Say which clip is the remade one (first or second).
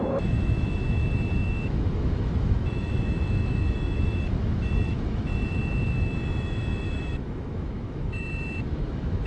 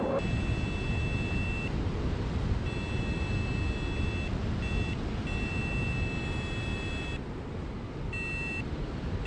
first